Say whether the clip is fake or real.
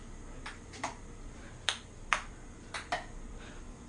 real